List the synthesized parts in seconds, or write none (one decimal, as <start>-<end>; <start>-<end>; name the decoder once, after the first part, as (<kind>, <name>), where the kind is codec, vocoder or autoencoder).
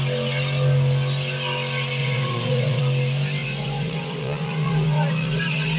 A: 2.0-2.8 (vocoder, Vocos); 3.4-5.8